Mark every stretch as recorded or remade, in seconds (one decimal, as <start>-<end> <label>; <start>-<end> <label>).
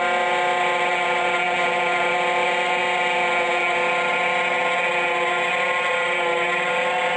0.0-7.2 recorded